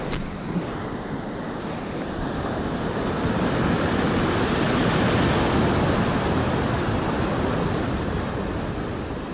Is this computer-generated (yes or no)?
no